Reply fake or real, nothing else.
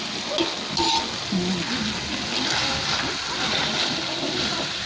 real